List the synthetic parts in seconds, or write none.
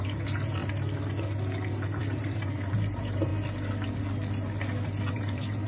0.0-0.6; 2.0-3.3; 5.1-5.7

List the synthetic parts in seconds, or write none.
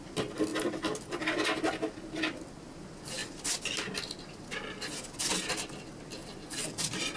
6.2-7.2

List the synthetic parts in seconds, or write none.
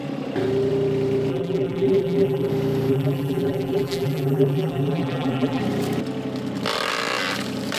1.3-2.5; 2.9-5.6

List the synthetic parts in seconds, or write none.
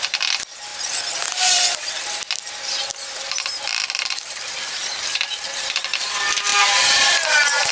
2.9-6.0; 6.5-7.1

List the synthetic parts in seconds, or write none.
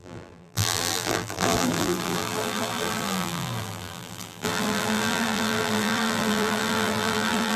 0.0-7.6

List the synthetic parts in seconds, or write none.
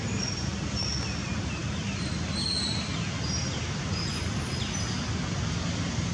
none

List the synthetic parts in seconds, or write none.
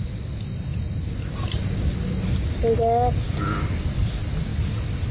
4.5-5.1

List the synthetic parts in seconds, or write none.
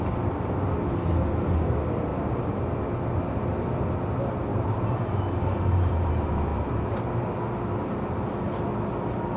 2.1-2.8; 4.5-6.1; 6.5-7.1